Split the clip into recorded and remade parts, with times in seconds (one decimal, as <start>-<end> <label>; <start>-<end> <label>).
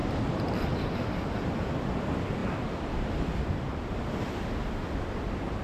0.0-5.6 remade